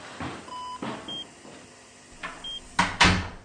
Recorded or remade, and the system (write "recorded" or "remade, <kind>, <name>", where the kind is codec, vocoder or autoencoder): recorded